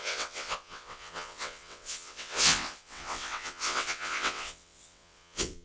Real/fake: fake